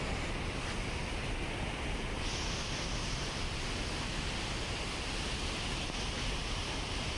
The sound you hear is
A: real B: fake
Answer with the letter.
A